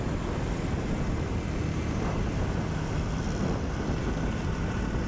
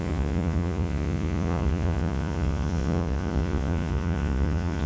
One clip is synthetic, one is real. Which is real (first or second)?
first